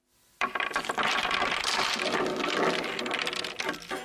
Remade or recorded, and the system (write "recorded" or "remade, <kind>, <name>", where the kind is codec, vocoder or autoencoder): recorded